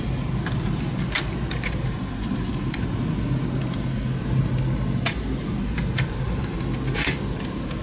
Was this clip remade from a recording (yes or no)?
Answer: no